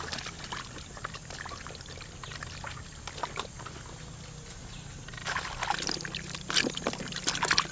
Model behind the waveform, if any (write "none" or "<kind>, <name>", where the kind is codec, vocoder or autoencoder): none